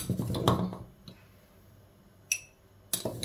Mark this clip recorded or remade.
recorded